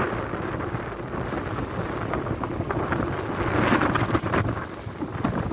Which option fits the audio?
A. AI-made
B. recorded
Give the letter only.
B